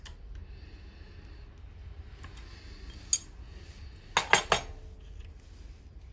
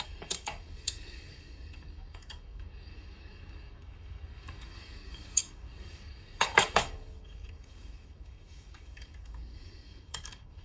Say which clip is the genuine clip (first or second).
first